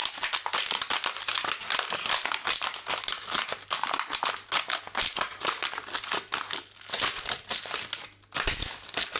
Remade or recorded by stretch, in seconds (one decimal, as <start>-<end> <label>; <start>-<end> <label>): 0.0-9.2 recorded

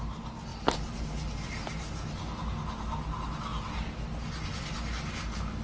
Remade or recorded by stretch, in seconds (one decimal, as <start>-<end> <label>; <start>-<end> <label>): 0.0-5.6 recorded